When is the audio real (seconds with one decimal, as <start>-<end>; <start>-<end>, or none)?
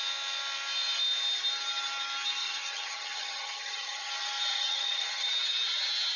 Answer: 0.0-2.4; 4.1-4.5; 5.3-6.2